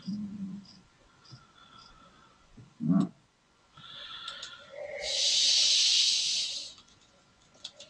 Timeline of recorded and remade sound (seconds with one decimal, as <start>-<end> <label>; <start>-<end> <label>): 0.0-4.6 remade; 4.6-5.3 recorded; 5.3-7.9 remade